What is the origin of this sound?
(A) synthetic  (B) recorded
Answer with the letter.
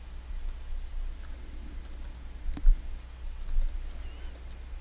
B